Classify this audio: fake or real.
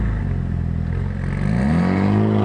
real